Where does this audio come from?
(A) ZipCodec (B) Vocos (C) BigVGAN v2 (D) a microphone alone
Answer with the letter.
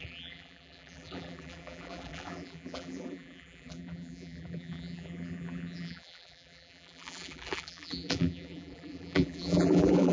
C